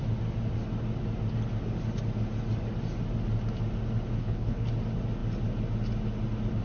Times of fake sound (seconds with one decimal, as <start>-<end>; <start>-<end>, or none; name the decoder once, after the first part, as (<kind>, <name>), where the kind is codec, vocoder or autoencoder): 4.2-4.7 (codec, HILCodec)